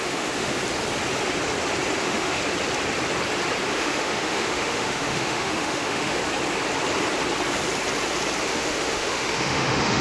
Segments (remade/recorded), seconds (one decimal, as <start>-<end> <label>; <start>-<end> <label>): 0.0-0.6 remade; 0.6-2.0 recorded; 2.0-2.4 remade; 2.4-3.7 recorded; 3.7-6.2 remade; 6.2-8.4 recorded; 8.4-10.0 remade